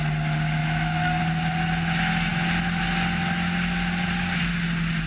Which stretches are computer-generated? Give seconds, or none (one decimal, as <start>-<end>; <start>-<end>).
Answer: 0.6-1.2